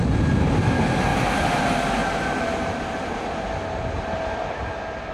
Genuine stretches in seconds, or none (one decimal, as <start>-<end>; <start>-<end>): 0.0-5.1